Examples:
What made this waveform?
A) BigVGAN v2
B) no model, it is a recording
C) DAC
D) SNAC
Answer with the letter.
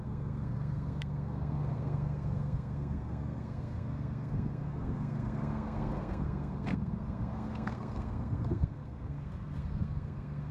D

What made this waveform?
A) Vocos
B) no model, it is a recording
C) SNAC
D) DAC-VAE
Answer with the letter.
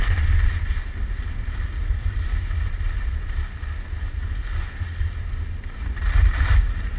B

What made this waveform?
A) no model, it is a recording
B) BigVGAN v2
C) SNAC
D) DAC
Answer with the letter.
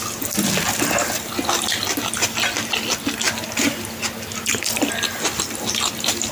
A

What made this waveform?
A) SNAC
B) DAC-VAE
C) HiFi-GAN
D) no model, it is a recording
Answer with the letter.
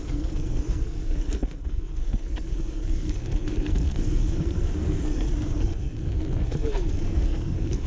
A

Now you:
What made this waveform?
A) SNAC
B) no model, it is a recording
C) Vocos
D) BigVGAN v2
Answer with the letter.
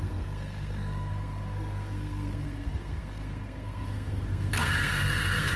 A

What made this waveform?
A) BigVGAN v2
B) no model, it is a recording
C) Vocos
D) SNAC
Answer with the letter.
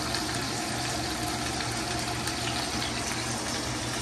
B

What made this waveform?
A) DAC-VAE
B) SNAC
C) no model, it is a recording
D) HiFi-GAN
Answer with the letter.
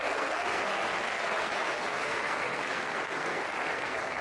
B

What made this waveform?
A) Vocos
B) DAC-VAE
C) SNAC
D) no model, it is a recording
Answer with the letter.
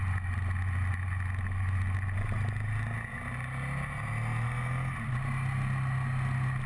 D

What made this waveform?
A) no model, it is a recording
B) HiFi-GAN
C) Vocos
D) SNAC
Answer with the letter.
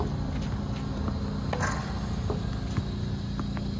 A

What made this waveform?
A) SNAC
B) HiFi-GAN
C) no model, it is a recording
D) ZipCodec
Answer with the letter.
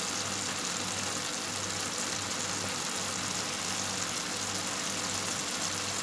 C